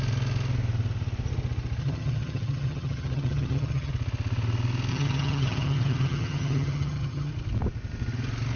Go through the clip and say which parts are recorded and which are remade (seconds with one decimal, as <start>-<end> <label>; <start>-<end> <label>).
0.0-1.8 recorded; 1.8-3.9 remade; 3.9-4.9 recorded; 4.9-7.3 remade; 7.3-8.6 recorded